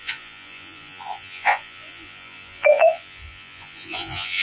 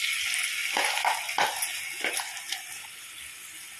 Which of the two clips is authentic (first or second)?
second